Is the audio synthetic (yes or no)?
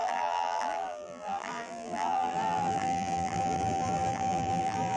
yes